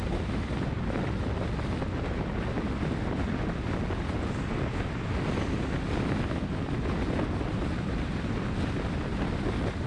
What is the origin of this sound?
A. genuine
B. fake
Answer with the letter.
A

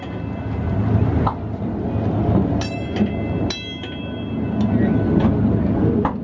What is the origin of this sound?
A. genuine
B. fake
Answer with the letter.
A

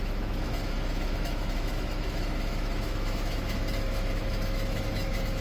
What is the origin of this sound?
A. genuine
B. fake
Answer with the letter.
B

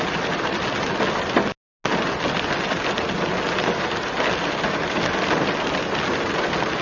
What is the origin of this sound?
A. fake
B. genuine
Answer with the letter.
B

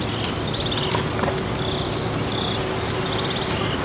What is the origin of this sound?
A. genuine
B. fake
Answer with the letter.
A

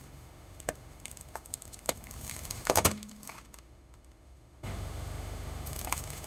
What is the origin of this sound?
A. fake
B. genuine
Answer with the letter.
A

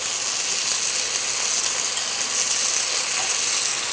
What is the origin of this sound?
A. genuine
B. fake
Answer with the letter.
A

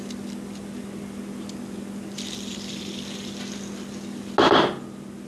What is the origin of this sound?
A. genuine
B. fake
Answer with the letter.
A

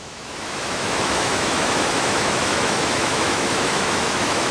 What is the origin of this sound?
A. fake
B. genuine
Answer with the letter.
A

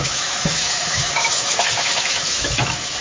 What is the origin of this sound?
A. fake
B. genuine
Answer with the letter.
A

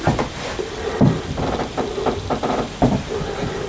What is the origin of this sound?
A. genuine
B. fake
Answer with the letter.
A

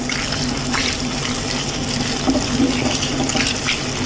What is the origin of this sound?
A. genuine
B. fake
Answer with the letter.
A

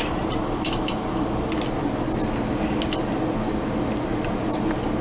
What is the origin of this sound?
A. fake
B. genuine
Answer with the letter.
B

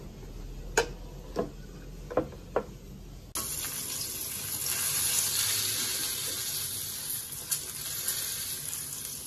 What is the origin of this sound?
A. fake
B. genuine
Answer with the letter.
B